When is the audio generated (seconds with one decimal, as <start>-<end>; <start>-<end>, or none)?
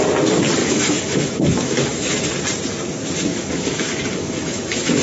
0.6-2.1; 3.3-5.0